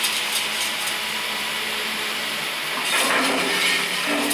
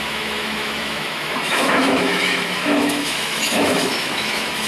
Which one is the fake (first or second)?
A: second